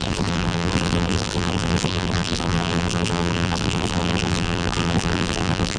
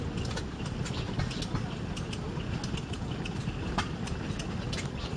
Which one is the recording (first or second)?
second